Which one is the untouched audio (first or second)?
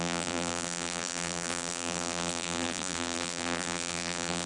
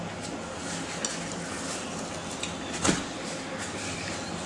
second